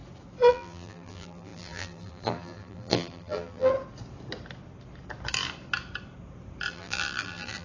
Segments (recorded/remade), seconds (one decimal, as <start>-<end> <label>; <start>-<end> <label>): 0.0-0.5 recorded; 0.5-3.7 remade; 3.7-6.7 recorded; 6.7-7.6 remade